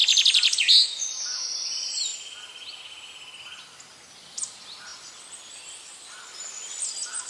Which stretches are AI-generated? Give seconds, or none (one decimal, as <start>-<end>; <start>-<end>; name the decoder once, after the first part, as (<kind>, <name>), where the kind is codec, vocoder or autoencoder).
none